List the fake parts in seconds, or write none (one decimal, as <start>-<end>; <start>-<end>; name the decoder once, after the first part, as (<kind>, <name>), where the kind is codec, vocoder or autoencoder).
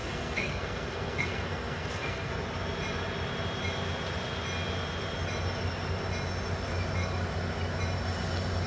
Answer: 0.0-2.3 (codec, SNAC)